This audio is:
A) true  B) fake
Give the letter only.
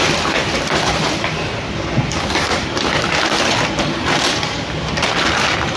B